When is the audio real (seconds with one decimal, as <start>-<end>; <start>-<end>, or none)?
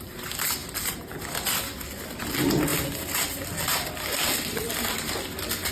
0.0-5.7